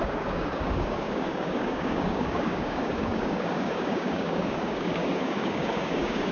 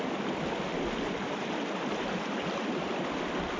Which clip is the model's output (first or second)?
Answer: first